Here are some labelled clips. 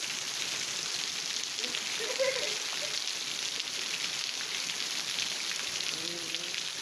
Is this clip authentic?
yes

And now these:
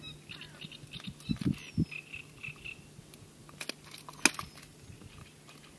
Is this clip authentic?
yes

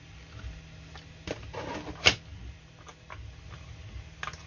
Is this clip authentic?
yes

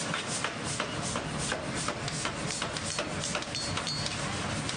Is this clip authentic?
yes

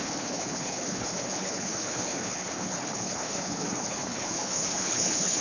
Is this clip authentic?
no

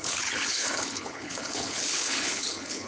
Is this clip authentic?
no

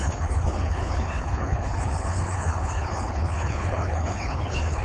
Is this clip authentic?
no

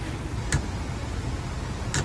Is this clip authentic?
yes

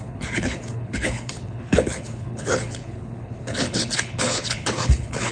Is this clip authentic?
no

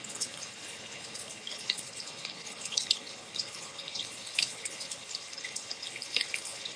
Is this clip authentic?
no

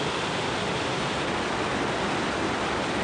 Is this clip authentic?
yes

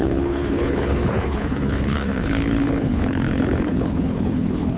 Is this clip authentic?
no